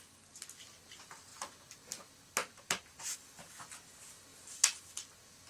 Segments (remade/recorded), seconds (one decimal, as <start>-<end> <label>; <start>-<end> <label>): 0.0-2.4 recorded; 2.4-3.6 remade; 3.6-5.5 recorded

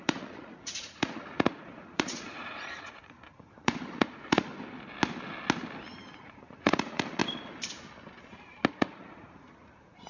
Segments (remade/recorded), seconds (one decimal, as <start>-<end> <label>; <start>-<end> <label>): 0.0-4.5 remade; 4.5-6.1 recorded; 6.1-7.2 remade; 7.2-8.7 recorded; 8.7-10.1 remade

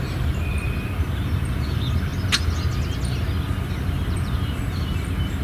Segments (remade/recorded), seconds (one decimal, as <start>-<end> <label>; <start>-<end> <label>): 0.0-2.1 remade; 2.1-3.7 recorded; 3.7-5.4 remade

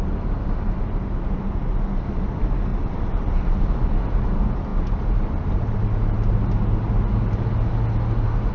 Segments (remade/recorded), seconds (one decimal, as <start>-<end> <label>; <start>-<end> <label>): 0.0-2.7 recorded; 2.7-3.9 remade; 3.9-8.5 recorded